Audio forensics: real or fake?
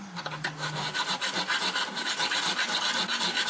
real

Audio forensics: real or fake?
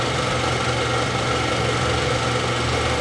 real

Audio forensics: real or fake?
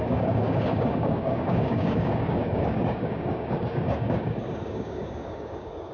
fake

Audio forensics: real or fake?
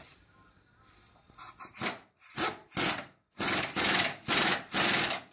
real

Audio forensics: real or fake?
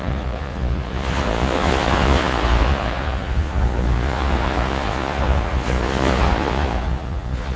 fake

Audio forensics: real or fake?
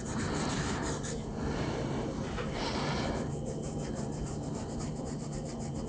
fake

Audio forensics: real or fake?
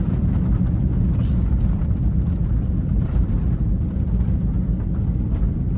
fake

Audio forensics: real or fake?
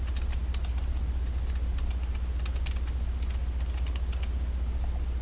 real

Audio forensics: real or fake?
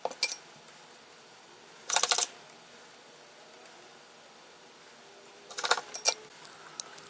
real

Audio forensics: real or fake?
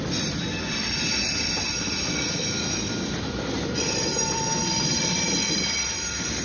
fake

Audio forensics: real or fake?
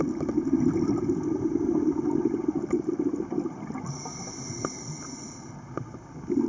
real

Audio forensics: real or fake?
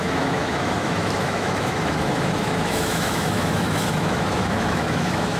fake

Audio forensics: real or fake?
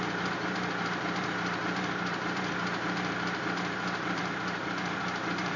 fake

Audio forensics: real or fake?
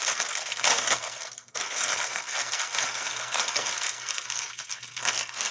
fake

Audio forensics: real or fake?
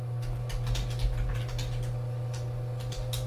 real